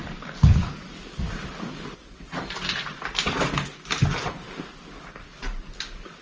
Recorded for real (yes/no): no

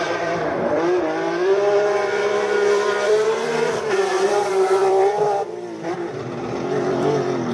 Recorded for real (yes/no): no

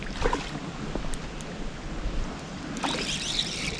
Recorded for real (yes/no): yes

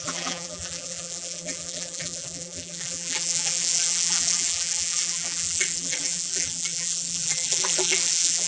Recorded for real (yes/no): no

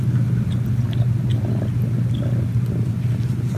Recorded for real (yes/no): yes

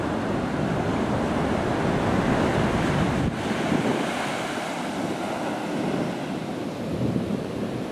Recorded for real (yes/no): yes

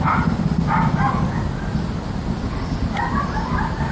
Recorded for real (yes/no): yes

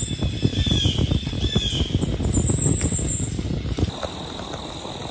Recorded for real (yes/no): yes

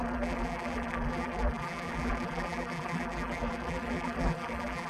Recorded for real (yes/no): no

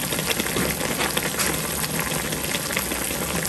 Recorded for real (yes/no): yes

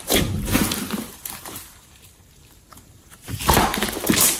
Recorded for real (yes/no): no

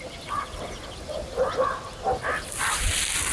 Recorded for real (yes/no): yes